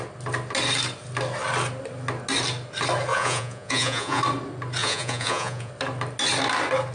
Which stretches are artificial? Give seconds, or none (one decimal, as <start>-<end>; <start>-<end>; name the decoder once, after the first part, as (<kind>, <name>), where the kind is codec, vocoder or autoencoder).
3.1-4.2 (vocoder, Vocos); 4.8-5.7